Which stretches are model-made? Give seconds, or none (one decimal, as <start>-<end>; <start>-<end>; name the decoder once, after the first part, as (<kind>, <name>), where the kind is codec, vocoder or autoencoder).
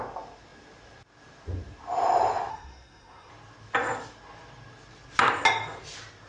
2.5-3.3 (codec, SNAC)